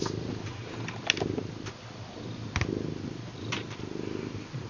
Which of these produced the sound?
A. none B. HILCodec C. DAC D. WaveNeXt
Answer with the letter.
A